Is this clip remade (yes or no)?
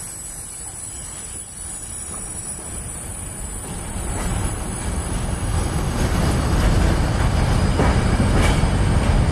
no